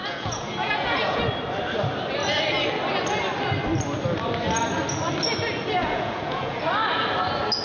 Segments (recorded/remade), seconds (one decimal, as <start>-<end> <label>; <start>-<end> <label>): 0.0-1.2 remade; 1.2-5.8 recorded; 5.8-6.6 remade; 6.6-7.6 recorded